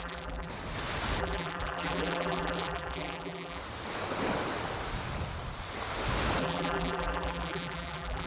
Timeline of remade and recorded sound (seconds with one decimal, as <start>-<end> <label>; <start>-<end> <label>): 0.0-0.5 remade; 0.5-1.2 recorded; 1.2-3.6 remade; 3.6-6.4 recorded; 6.4-8.3 remade